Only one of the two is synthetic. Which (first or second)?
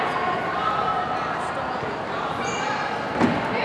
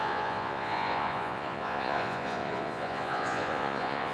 second